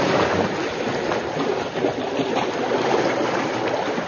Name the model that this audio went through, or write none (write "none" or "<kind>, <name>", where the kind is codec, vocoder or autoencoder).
none